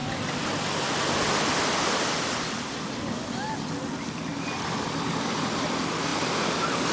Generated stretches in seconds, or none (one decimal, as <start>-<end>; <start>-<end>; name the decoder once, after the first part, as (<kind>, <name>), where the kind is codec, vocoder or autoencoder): none